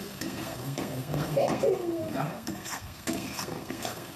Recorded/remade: remade